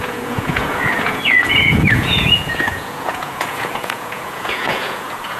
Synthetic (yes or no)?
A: yes